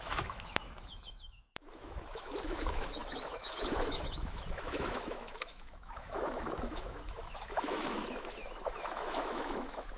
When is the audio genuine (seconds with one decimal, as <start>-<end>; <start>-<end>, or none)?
none